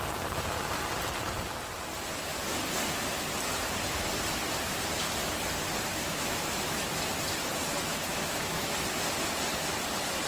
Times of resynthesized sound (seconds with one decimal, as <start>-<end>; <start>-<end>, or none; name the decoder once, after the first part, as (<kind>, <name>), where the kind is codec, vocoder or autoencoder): 5.9-7.0 (autoencoder, DAC-VAE); 8.1-8.7